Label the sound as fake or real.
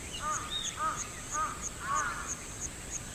real